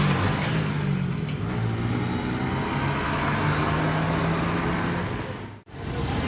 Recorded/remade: recorded